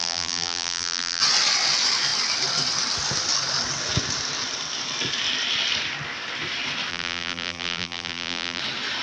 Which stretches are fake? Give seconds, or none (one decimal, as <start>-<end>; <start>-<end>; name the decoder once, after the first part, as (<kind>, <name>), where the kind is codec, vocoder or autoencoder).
0.0-1.2 (vocoder, BigVGAN v2); 6.9-8.6